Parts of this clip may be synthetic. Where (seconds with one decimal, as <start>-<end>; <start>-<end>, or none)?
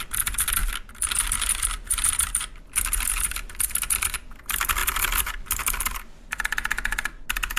none